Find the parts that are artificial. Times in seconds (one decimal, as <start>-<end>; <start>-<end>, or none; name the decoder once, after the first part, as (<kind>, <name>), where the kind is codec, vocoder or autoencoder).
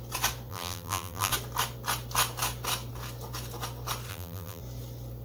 0.5-1.3 (vocoder, BigVGAN v2); 4.1-4.6